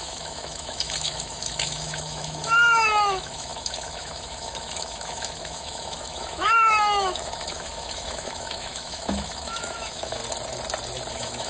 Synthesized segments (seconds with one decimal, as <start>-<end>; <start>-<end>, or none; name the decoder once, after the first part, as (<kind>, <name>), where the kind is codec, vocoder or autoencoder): 0.0-10.2 (autoencoder, DAC-VAE); 11.1-11.5